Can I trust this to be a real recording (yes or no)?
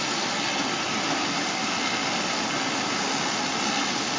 yes